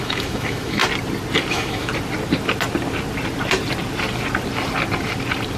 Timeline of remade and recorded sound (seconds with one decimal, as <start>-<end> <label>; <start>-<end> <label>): 0.0-0.8 remade; 0.8-1.5 recorded; 1.5-1.9 remade; 1.9-5.6 recorded